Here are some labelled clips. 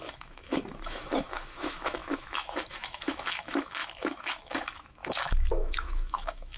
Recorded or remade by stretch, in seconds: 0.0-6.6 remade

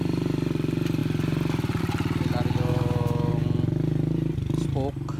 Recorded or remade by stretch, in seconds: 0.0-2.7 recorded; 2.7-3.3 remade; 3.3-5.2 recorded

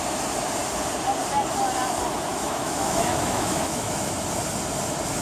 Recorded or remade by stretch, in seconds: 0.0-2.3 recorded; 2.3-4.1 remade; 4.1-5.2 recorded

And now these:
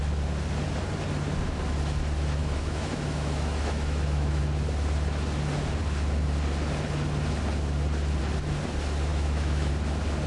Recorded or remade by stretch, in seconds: 0.0-2.4 recorded; 2.4-4.4 remade; 4.4-9.1 recorded; 9.1-9.7 remade; 9.7-10.3 recorded

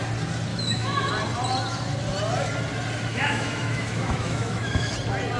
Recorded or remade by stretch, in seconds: 0.0-0.5 recorded; 0.5-1.1 remade; 1.1-3.1 recorded; 3.1-4.9 remade; 4.9-5.4 recorded